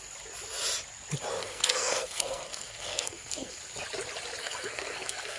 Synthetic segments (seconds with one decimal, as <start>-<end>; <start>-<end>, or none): 1.4-3.6; 4.4-5.4